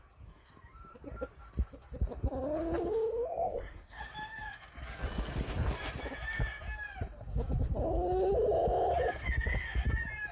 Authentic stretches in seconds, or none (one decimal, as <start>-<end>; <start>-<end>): 0.0-3.3; 4.0-10.3